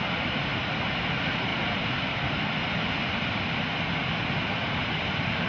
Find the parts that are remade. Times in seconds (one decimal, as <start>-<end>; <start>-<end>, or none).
1.5-3.6